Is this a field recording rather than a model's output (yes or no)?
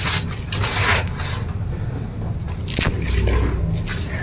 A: yes